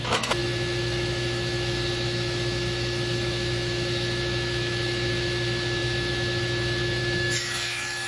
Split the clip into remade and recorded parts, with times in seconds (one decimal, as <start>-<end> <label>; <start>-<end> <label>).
0.0-8.1 remade